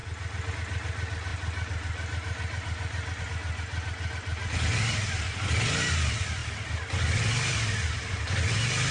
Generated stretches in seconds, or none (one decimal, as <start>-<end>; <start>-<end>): none

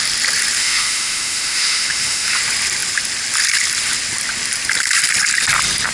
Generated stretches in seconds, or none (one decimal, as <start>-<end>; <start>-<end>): 0.6-2.4

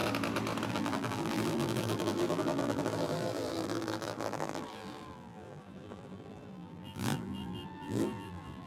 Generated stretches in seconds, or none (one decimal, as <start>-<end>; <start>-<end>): 0.7-8.7

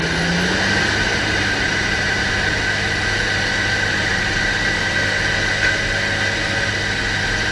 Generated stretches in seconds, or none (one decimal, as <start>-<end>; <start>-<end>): 1.1-2.3; 4.1-4.9

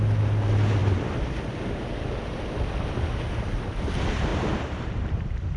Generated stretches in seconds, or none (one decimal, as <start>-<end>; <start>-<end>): 4.3-5.6